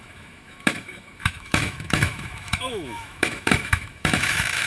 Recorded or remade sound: remade